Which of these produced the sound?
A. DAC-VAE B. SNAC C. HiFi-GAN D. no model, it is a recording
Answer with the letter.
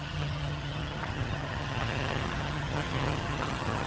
C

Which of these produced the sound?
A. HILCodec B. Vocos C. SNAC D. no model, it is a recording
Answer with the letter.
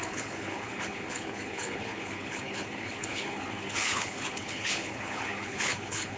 A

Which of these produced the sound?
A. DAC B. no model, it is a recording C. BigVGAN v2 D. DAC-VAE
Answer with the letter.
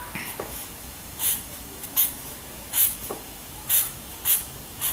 D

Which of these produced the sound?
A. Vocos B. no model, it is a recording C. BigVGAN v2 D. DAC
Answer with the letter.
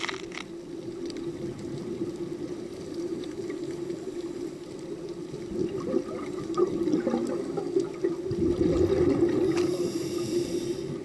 B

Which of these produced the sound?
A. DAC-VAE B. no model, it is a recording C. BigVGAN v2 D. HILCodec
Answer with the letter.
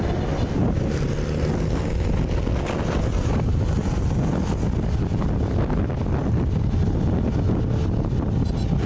B